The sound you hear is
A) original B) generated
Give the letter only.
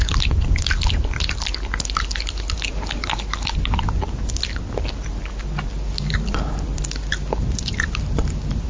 A